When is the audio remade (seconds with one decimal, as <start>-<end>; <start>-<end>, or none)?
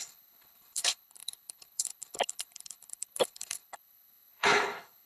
0.0-5.1